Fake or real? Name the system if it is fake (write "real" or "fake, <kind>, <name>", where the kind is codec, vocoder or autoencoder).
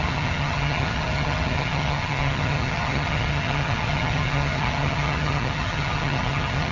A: fake, vocoder, HiFi-GAN